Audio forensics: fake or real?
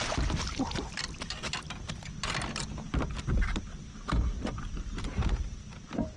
fake